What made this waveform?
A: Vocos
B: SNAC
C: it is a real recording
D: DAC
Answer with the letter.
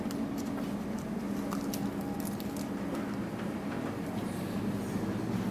C